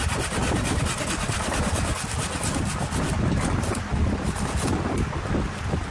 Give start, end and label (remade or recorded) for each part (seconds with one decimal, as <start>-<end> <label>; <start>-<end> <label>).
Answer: 0.0-5.9 recorded